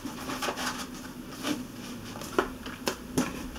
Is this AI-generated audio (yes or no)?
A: no